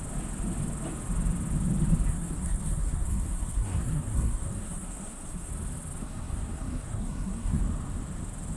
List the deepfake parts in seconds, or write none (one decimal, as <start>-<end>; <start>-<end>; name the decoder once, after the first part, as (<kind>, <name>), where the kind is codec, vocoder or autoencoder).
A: 2.1-5.5 (codec, SNAC); 6.0-7.6